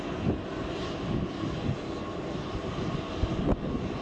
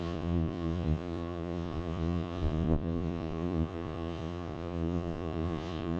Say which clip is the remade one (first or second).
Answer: second